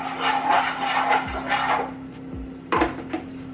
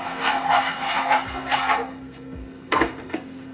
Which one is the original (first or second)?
first